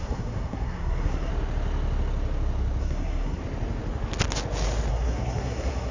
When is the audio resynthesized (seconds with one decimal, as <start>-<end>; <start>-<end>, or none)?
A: 0.0-1.3; 2.8-3.4; 4.9-5.9

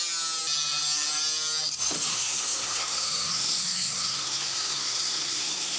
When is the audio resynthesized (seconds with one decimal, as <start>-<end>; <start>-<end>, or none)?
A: 2.1-5.8

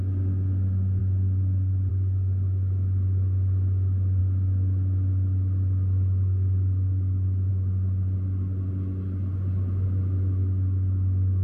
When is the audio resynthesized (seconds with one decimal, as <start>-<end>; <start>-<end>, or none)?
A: none

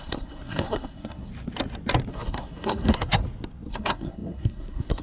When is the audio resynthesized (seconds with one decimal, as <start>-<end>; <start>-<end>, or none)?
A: 0.0-1.3; 2.1-3.2; 3.7-5.0